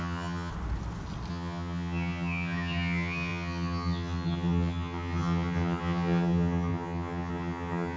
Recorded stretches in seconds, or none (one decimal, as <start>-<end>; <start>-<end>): 0.5-1.3